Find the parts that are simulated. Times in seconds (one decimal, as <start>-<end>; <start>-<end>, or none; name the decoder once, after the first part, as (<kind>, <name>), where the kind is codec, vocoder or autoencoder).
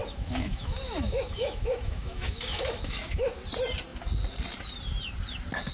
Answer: 0.0-3.4 (autoencoder, DAC-VAE)